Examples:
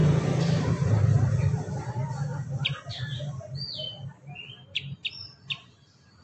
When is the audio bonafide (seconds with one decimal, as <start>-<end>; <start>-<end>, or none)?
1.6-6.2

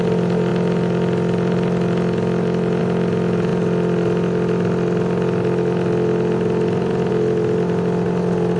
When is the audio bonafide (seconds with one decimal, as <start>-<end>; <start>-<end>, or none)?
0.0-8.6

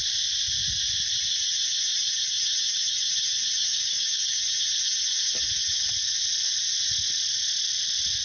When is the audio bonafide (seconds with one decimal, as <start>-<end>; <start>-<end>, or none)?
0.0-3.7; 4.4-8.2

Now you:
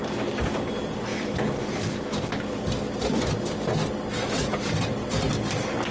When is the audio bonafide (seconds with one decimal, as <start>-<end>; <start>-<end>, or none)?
0.0-5.9

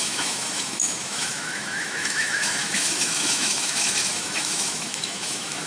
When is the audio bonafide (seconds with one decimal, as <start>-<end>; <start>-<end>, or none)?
none